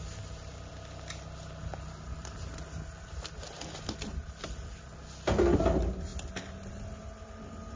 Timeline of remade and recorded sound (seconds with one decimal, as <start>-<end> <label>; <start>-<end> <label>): 0.0-7.8 recorded